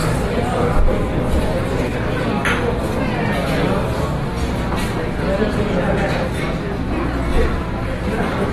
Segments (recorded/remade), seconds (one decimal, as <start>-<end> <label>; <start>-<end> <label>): 0.0-0.8 remade; 0.8-7.3 recorded; 7.3-8.5 remade